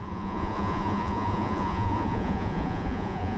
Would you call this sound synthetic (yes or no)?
yes